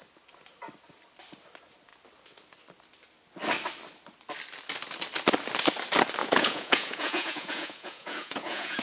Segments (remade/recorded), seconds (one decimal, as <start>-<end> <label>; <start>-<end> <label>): 0.0-6.2 recorded; 6.2-8.8 remade